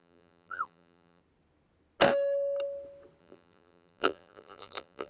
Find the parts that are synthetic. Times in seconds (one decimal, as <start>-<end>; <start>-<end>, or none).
0.0-1.2; 3.2-5.1